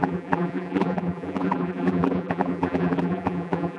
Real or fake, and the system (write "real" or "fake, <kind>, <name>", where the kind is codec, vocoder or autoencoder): fake, vocoder, BigVGAN v2